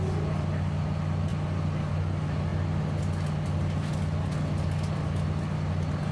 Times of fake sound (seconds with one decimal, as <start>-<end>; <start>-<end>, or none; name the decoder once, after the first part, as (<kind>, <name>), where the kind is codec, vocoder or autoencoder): none